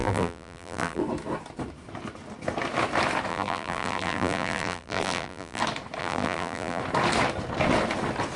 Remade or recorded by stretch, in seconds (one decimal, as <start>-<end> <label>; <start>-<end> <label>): 0.0-1.0 remade; 1.0-3.3 recorded; 3.3-5.6 remade; 5.6-6.0 recorded; 6.0-6.8 remade; 6.8-8.4 recorded